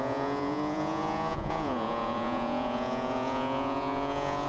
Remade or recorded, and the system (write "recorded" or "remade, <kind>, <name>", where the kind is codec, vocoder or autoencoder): remade, vocoder, Vocos